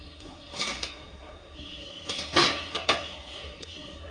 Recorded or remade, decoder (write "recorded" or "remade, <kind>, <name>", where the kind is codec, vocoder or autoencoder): remade, codec, SNAC